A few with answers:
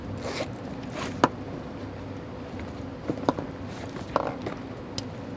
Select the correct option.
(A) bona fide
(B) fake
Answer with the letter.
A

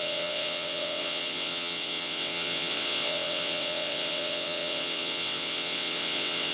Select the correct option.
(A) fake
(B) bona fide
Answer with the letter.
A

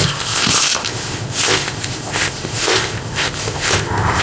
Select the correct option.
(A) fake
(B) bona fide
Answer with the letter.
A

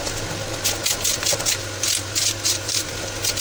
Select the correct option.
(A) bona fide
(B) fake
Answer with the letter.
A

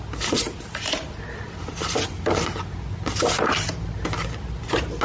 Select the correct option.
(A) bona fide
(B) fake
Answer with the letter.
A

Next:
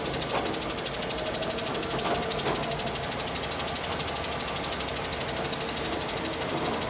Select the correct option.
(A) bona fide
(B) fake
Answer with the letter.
A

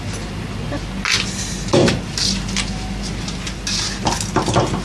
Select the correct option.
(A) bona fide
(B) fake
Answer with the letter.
A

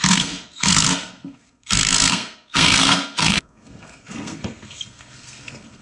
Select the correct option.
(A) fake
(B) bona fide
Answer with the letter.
A